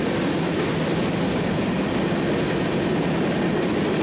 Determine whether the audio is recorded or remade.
recorded